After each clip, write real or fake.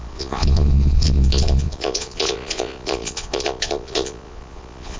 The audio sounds fake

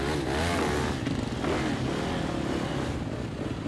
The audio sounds real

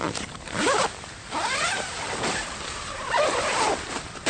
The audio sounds fake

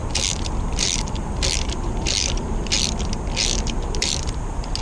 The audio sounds real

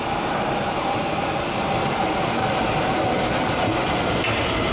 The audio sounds real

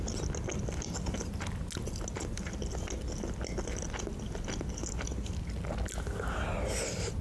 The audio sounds real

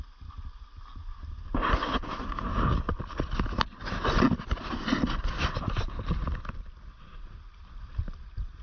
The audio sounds real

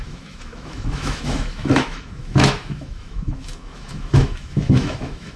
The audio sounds fake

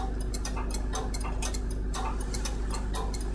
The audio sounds real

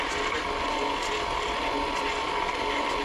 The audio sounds real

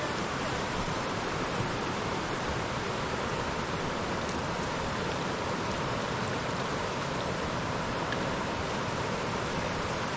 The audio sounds fake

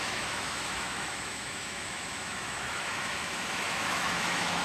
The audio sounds fake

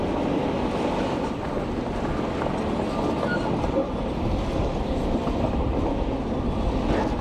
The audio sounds real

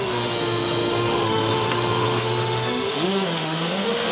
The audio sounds fake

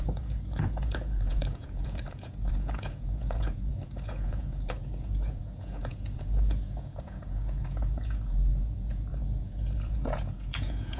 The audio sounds fake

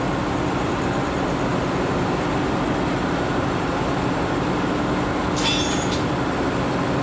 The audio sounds real